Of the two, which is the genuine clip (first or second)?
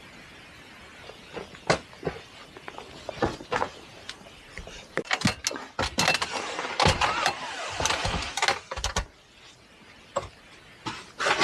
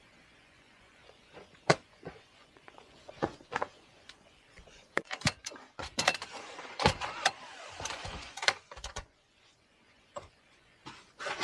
first